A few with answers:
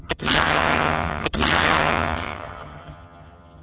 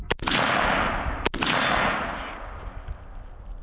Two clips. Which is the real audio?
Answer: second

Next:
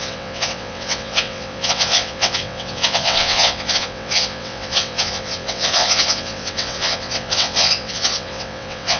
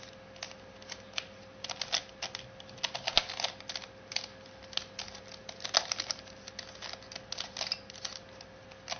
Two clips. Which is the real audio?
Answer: second